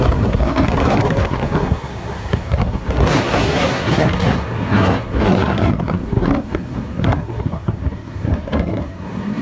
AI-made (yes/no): yes